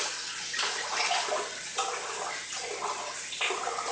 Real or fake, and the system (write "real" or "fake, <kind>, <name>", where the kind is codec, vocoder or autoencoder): real